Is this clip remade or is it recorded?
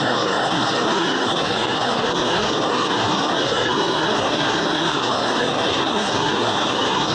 remade